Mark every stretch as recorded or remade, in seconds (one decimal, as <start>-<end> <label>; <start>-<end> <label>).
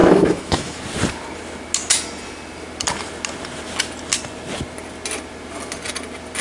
0.0-0.8 remade; 0.8-6.4 recorded